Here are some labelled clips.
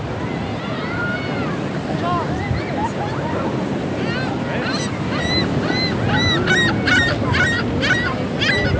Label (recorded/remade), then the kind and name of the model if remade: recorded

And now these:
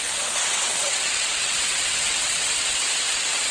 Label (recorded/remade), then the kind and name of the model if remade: remade, vocoder, WaveNeXt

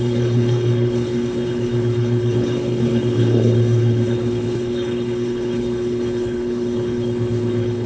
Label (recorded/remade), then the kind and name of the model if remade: remade, codec, HILCodec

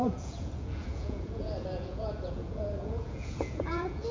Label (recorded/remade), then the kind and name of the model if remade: remade, vocoder, Vocos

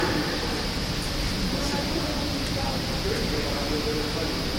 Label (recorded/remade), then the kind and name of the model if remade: remade, vocoder, BigVGAN v2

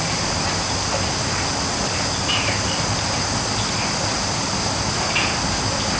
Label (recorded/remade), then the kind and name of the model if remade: recorded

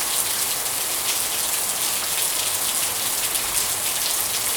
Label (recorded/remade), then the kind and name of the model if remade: recorded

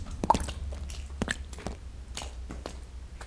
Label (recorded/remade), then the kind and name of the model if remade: recorded